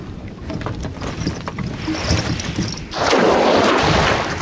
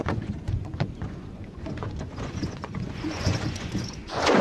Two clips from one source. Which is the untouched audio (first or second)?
first